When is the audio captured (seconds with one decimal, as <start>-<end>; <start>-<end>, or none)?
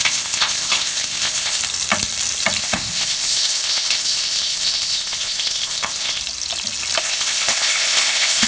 1.6-2.6; 6.2-7.0